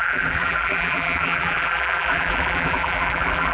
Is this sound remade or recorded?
remade